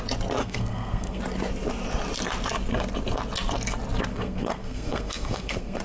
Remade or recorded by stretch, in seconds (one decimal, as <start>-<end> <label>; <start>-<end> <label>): 0.0-0.4 recorded; 0.4-1.2 remade; 1.2-4.1 recorded; 4.1-5.8 remade